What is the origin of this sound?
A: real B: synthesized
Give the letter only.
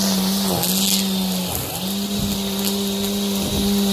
A